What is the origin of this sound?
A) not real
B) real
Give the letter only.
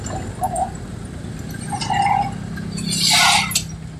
B